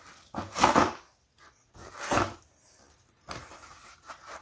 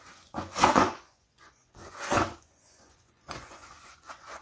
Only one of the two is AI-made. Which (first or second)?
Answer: second